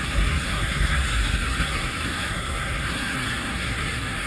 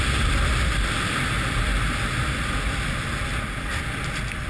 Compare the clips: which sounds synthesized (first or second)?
first